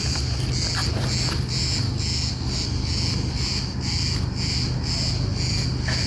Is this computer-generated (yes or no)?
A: no